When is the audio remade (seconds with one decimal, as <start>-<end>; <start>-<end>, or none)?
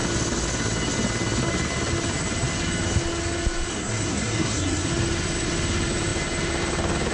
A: 3.7-4.9